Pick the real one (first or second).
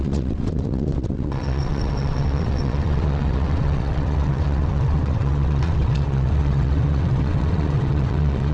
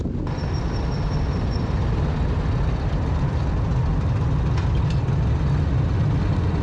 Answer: second